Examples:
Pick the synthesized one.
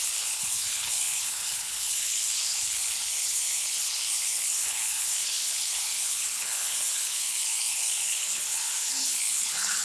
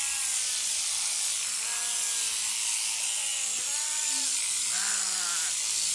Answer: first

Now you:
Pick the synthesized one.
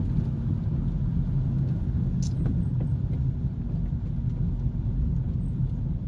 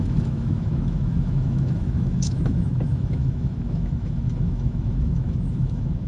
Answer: second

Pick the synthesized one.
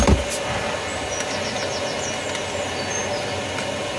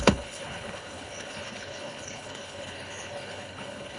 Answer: second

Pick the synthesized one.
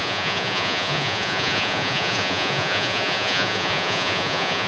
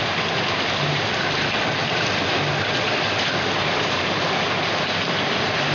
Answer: first